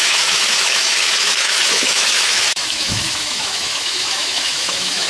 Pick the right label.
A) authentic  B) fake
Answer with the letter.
B